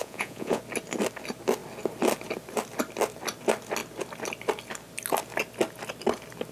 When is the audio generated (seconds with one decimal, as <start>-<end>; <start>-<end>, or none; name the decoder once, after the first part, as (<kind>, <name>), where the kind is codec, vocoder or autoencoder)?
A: 0.0-0.6 (vocoder, Vocos)